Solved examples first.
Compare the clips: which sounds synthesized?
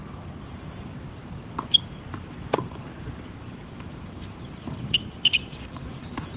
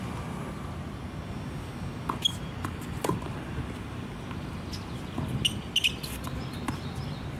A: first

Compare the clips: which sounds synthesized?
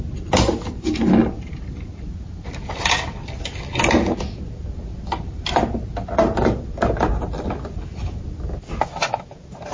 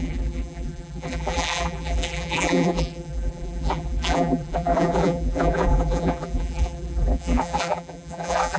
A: second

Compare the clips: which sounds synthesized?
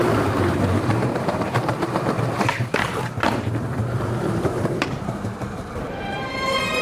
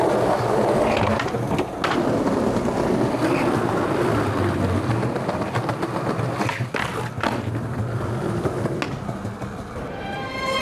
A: first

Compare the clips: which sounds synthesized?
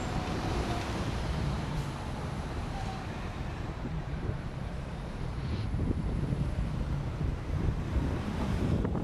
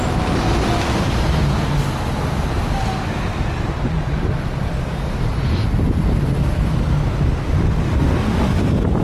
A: first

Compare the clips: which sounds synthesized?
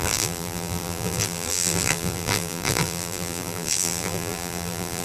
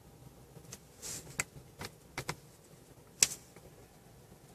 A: first